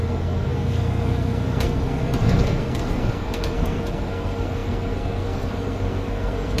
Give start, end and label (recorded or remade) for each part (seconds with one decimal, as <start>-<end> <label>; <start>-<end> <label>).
0.0-6.6 remade